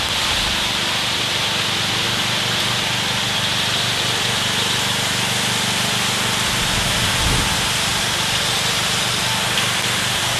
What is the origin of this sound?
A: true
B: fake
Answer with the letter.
A